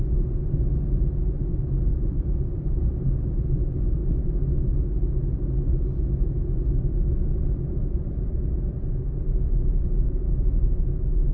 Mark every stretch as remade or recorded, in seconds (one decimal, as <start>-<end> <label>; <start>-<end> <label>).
0.0-1.9 recorded; 1.9-2.8 remade; 2.8-11.3 recorded